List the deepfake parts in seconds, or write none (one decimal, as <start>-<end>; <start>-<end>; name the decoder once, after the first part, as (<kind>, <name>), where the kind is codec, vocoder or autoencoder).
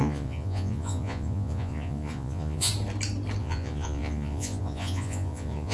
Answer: 0.0-2.7 (vocoder, Vocos); 3.4-5.7